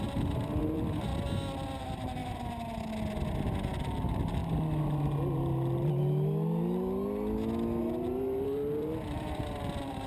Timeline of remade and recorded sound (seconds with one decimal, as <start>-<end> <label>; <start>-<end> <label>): 0.0-1.1 remade; 1.1-1.8 recorded; 1.8-2.2 remade; 2.2-3.9 recorded; 3.9-4.4 remade; 4.4-7.8 recorded; 7.8-10.1 remade